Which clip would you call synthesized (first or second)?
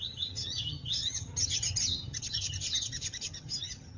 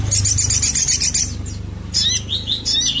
first